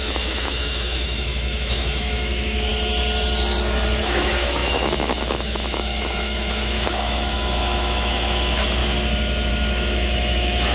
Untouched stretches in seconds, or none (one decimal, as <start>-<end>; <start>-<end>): 2.7-4.0; 8.8-9.5